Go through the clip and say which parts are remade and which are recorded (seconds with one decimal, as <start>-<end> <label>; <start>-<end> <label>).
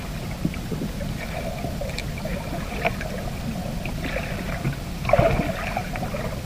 0.0-2.3 recorded; 2.3-3.4 remade; 3.4-6.5 recorded